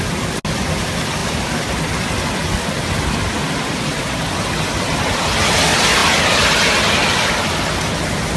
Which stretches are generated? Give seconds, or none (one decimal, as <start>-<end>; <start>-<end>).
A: 3.4-4.0